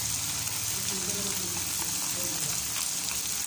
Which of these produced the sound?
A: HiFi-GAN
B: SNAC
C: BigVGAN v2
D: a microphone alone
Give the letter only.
D